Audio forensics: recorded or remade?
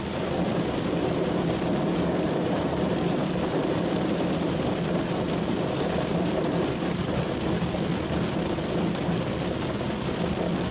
remade